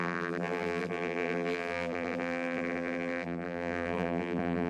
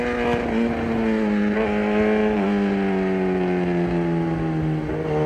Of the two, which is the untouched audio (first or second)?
second